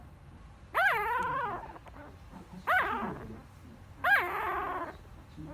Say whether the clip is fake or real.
fake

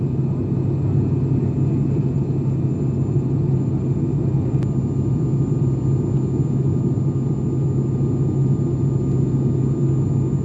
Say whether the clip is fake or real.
real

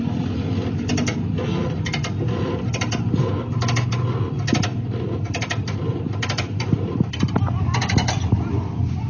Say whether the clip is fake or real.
real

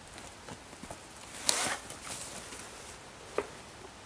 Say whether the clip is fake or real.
real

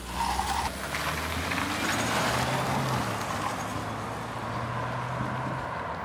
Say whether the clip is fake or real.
real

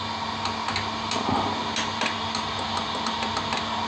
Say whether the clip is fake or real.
real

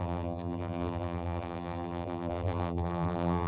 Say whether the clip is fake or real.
fake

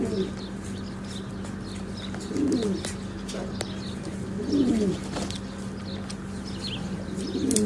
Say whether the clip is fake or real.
real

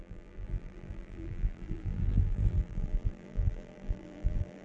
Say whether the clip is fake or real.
fake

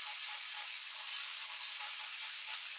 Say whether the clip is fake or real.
fake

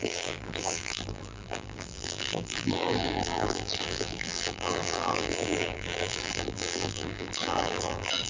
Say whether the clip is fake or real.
fake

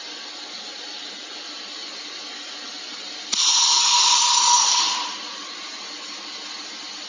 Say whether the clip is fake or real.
real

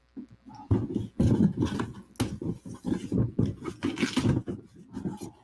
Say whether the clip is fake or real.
real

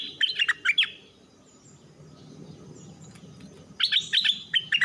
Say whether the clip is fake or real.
real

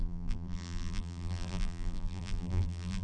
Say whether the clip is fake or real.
fake